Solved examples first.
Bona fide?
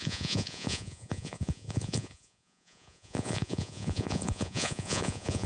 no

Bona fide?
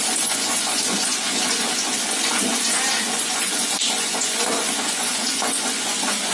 no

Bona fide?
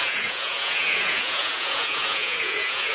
no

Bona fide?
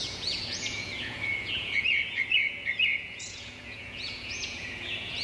no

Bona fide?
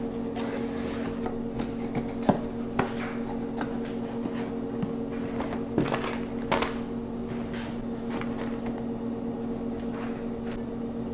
yes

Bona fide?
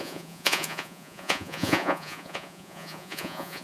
no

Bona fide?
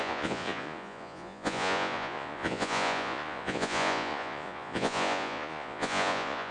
no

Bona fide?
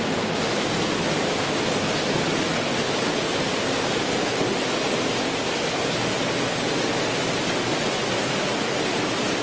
yes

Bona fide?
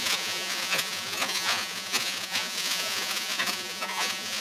no